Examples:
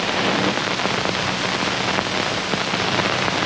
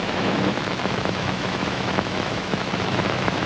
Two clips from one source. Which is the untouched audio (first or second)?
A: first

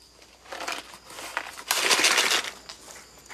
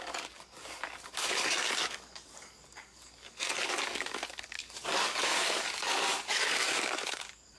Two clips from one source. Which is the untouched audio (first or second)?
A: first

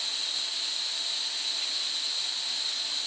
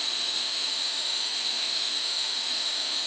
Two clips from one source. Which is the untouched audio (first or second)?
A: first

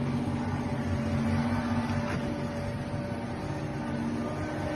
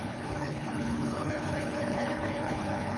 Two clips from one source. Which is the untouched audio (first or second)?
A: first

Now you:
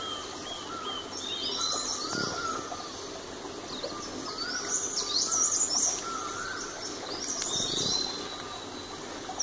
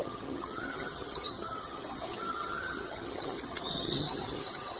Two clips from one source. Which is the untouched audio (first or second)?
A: first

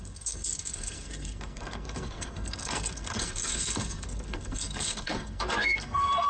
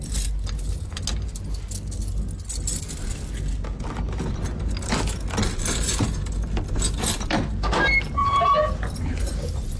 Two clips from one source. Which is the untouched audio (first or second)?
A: second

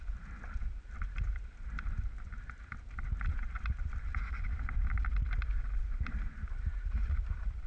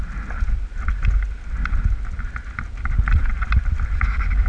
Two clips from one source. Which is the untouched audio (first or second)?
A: second